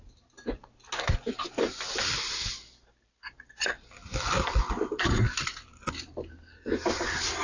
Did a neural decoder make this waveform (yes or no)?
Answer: no